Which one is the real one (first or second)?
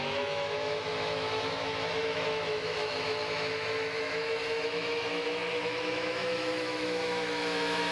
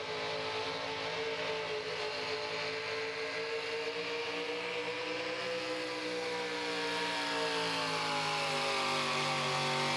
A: second